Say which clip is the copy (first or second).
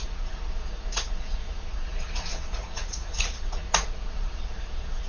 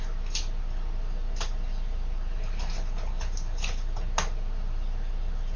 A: first